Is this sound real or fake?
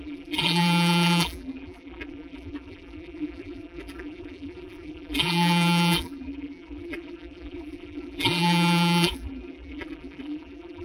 fake